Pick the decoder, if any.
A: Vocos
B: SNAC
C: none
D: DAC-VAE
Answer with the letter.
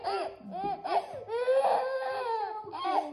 C